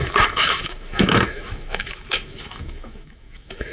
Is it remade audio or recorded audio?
remade